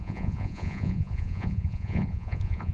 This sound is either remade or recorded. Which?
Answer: remade